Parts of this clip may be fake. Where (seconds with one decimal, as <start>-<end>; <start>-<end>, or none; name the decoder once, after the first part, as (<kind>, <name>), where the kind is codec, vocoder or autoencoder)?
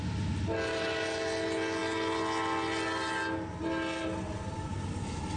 none